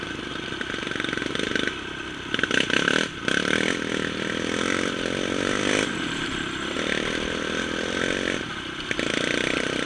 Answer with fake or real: fake